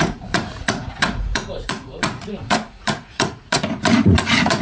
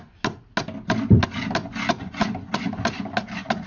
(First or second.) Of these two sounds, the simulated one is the first